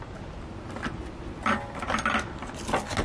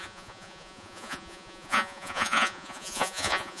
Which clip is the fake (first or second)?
second